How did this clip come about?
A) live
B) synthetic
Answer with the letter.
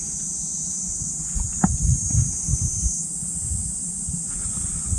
A